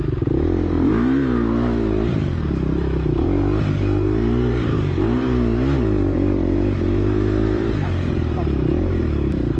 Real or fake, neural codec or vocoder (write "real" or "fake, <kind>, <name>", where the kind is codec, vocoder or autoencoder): fake, vocoder, BigVGAN v2